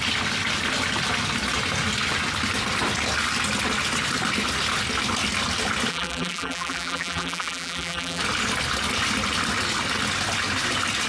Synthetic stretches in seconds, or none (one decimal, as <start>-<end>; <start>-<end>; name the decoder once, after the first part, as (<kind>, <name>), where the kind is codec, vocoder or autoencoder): 5.9-8.2 (vocoder, BigVGAN v2)